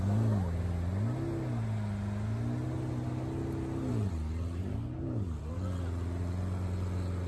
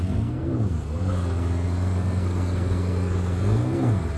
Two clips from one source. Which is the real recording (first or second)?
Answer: first